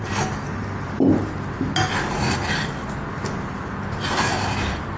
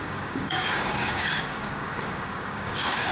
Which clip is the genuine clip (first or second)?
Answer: first